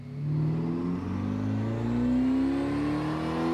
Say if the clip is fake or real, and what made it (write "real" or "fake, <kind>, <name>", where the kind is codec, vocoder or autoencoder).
real